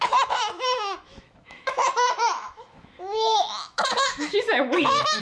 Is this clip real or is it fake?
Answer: fake